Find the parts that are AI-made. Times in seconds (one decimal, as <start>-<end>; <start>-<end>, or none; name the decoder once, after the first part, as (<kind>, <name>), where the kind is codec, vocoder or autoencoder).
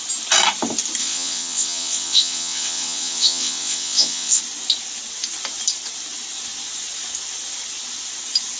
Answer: 1.0-4.4 (vocoder, WaveNeXt)